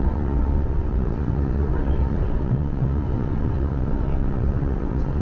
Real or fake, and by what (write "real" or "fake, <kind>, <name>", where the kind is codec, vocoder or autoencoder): fake, vocoder, WaveNeXt